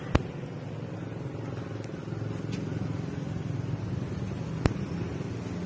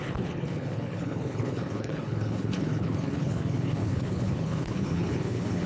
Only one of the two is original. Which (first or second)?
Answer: first